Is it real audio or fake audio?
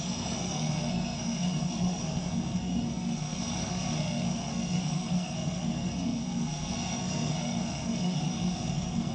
fake